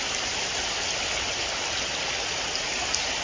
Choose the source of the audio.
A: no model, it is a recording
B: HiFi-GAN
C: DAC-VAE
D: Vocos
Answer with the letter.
A